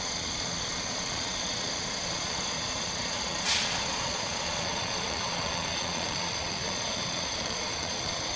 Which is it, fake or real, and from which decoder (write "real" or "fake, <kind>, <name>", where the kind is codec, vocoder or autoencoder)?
fake, vocoder, Vocos